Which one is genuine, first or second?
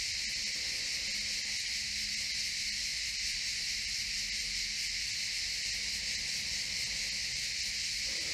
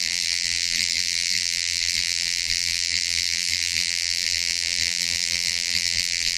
first